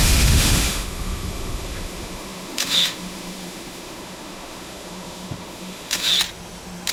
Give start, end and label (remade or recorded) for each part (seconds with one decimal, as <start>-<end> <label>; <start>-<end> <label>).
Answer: 0.0-6.1 remade; 6.1-6.9 recorded